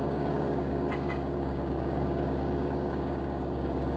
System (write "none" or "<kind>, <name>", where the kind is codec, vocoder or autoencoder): codec, DAC